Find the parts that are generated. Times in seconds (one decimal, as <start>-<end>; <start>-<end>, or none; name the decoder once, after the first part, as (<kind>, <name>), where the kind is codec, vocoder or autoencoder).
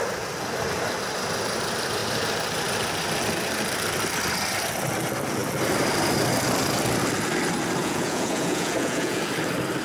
7.8-9.2 (vocoder, Vocos)